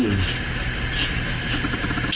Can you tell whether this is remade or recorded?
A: recorded